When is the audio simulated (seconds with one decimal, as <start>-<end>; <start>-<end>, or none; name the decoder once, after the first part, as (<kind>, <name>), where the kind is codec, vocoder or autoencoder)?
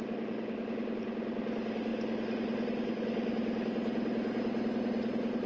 none